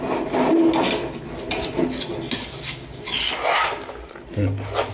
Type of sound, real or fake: real